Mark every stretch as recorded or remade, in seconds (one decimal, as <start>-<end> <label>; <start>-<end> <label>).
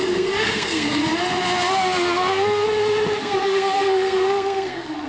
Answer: 0.0-1.0 remade; 1.0-3.2 recorded; 3.2-5.1 remade